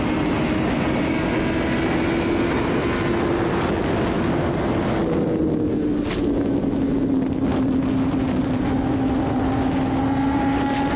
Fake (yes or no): no